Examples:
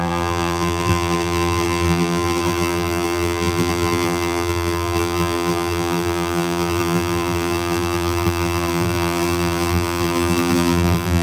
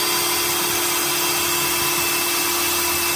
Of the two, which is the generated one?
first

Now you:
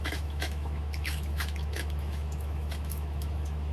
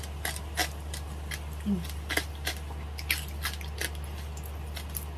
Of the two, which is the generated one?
first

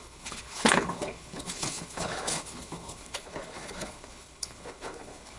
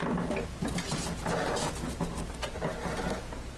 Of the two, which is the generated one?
first